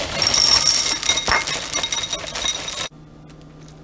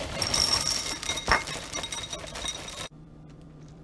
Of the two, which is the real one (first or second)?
first